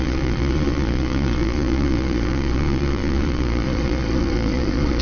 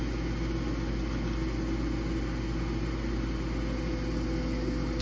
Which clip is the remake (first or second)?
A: first